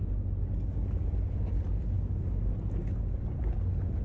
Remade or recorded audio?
recorded